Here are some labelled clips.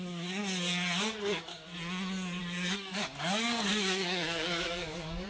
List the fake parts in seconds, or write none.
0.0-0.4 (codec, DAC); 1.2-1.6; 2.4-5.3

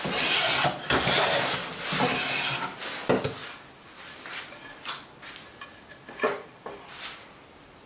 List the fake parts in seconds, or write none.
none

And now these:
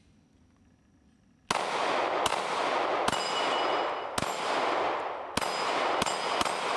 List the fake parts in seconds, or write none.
none